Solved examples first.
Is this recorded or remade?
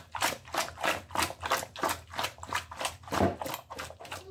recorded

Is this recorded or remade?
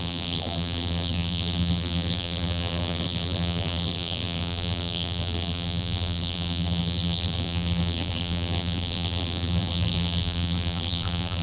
remade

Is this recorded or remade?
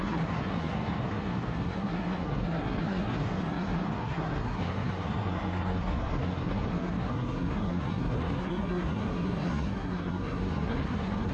remade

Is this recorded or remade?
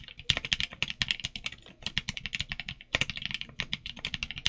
recorded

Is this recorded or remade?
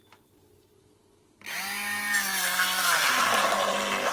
recorded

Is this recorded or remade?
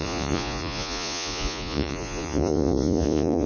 remade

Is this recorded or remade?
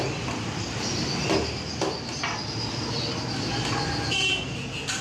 recorded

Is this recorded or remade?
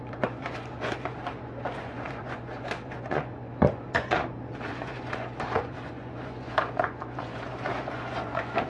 remade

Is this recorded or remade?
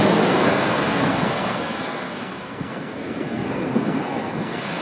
remade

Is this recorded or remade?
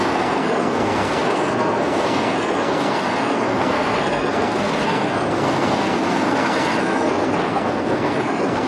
remade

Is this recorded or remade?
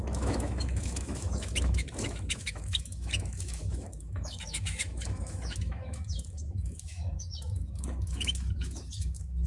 remade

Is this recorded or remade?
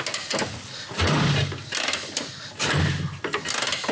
recorded